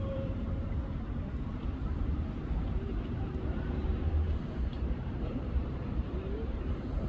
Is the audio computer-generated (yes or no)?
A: yes